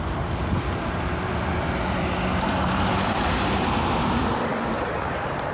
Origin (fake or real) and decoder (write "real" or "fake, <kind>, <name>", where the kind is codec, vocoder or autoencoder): fake, vocoder, BigVGAN v2